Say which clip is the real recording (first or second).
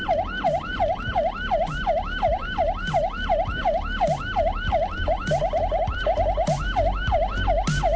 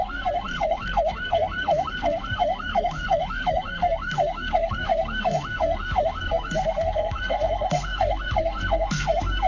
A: first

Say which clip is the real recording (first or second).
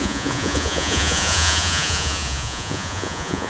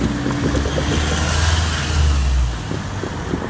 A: second